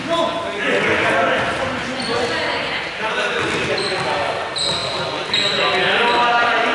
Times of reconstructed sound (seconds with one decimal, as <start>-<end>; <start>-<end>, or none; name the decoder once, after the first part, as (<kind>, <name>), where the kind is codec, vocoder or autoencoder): none